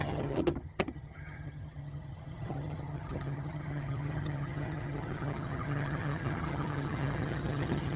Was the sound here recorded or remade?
remade